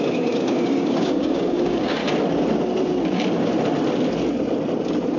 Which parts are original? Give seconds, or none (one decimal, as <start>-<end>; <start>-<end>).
2.0-5.2